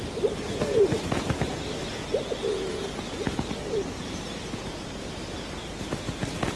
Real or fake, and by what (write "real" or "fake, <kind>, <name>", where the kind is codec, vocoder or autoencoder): real